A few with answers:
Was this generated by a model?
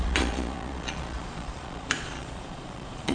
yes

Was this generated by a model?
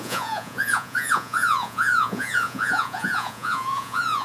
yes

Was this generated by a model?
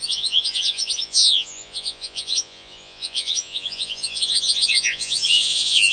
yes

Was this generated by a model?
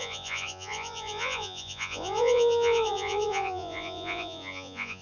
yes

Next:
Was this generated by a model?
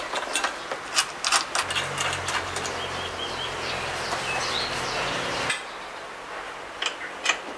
no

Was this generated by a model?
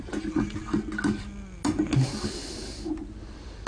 no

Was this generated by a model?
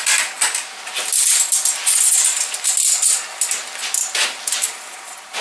no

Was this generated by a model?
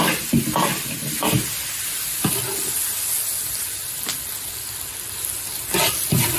no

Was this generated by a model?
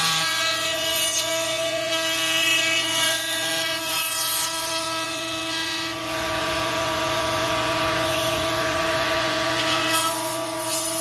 yes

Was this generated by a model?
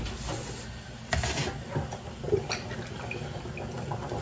no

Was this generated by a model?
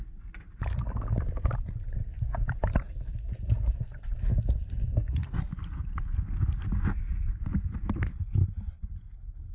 no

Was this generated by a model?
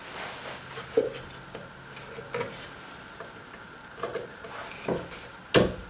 no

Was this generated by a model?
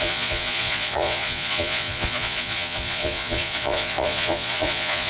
yes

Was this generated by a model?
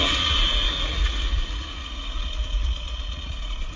yes